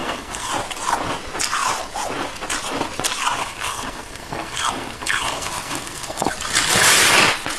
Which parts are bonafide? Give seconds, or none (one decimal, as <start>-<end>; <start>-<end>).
0.5-3.4; 6.3-7.6